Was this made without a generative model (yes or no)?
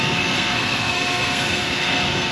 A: no